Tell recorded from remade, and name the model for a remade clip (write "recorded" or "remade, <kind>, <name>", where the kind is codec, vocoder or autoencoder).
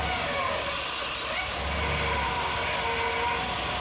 recorded